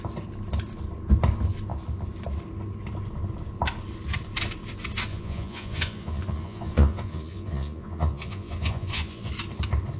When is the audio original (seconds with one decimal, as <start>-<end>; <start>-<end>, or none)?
0.0-5.1; 9.3-10.0